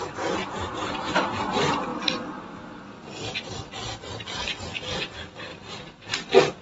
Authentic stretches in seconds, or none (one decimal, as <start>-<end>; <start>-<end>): 0.0-0.4; 1.1-6.6